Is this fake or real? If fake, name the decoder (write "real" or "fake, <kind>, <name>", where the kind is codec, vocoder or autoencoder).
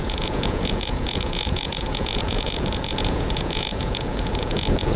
fake, vocoder, Vocos